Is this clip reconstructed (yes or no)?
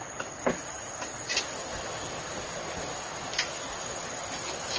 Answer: no